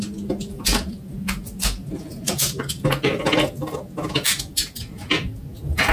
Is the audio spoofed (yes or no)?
no